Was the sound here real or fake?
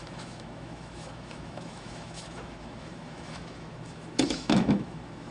fake